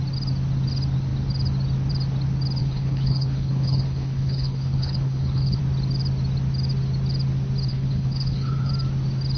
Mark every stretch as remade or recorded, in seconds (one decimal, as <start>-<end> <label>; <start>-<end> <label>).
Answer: 0.0-2.6 recorded; 2.6-5.6 remade; 5.6-7.7 recorded; 7.7-8.7 remade; 8.7-9.4 recorded